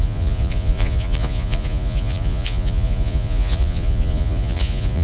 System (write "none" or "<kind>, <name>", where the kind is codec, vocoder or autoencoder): vocoder, Vocos